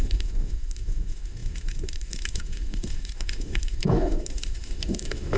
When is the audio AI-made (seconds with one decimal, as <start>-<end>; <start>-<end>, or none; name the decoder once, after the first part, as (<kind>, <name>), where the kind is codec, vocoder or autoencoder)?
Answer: 0.0-5.4 (autoencoder, DAC-VAE)